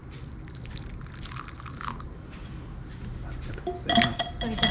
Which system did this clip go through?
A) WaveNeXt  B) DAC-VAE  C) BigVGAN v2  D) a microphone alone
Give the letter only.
D